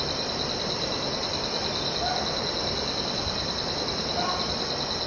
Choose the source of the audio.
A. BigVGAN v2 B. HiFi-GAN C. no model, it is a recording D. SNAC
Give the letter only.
C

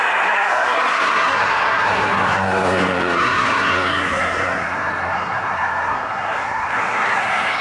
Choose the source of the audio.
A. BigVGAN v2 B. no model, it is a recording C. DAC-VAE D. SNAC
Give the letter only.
D